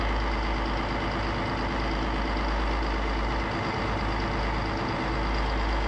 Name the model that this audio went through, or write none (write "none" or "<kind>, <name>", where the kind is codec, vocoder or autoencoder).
none